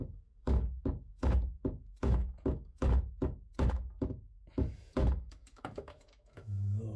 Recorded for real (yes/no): no